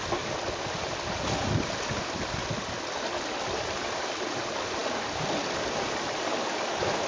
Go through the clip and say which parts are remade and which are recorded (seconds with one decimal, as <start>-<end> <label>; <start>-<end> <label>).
0.0-4.8 recorded; 4.8-7.1 remade